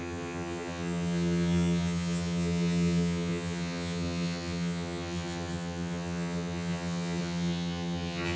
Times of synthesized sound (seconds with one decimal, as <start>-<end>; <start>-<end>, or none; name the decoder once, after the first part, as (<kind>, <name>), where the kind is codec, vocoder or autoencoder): 0.0-8.4 (vocoder, HiFi-GAN)